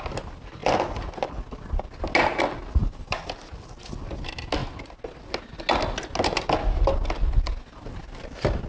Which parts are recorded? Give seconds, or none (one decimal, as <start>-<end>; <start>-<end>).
0.0-2.8; 3.5-7.5; 8.0-8.7